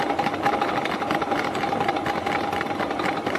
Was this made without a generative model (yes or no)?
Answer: yes